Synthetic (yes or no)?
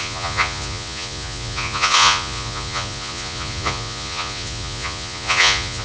yes